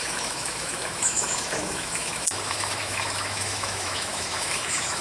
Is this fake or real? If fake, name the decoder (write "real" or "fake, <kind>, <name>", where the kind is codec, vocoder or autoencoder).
fake, autoencoder, DAC-VAE